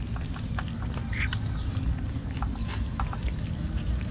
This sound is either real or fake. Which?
real